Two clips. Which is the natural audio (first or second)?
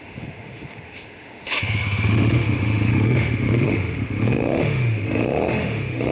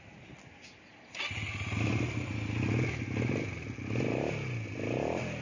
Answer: second